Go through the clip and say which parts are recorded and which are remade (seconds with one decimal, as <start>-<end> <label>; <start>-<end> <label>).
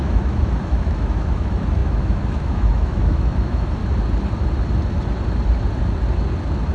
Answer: 0.0-3.8 remade; 3.8-6.7 recorded